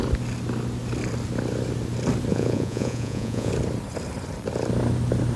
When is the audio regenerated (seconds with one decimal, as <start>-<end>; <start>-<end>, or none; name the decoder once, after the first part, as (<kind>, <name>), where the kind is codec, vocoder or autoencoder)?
2.3-3.5 (vocoder, Vocos)